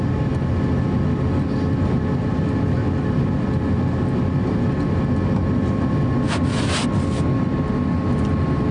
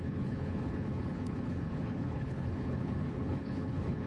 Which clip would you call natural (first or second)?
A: first